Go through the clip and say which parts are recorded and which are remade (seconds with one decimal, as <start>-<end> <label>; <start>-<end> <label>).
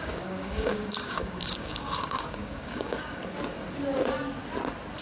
0.0-3.2 remade; 3.2-5.0 recorded